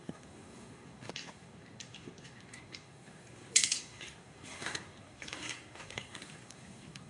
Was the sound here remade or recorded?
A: remade